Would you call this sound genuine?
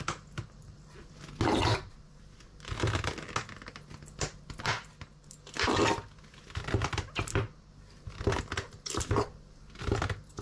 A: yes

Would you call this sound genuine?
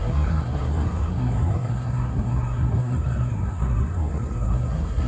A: no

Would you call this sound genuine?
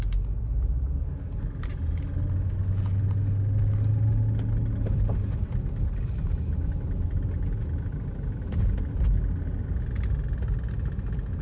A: yes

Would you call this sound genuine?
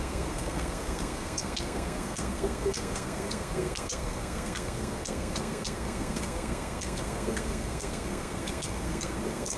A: no